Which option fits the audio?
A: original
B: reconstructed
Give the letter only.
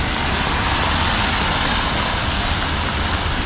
A